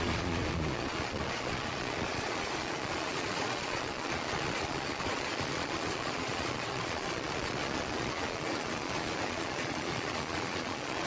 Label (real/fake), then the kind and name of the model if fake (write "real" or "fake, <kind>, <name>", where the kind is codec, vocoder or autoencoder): fake, vocoder, Vocos